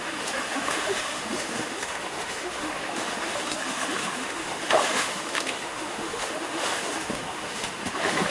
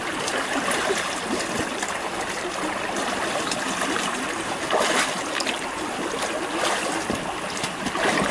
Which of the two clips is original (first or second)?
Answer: second